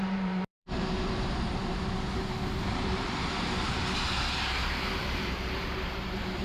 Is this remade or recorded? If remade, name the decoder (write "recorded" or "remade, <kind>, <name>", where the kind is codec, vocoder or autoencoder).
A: remade, vocoder, BigVGAN v2